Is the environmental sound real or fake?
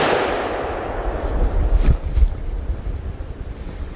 real